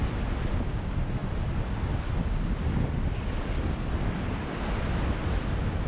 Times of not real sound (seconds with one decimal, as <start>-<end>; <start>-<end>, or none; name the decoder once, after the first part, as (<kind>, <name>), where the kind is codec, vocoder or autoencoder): none